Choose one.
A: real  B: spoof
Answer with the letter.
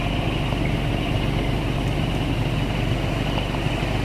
A